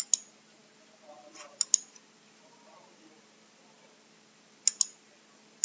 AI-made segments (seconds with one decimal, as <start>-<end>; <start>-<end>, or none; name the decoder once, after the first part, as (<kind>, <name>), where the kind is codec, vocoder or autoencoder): none